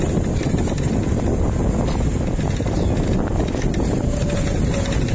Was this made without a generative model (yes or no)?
yes